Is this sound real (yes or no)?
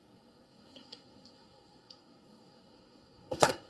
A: no